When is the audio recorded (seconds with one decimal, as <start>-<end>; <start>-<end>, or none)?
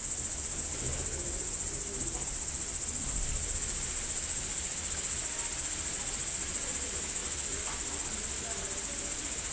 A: 0.0-9.5